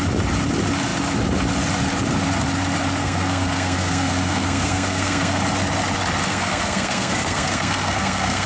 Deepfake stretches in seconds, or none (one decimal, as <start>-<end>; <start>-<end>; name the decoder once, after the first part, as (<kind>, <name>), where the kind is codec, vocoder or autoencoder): 3.0-5.4 (codec, SNAC); 6.3-8.5